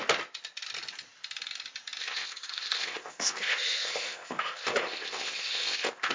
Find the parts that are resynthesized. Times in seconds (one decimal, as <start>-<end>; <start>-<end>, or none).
2.0-6.1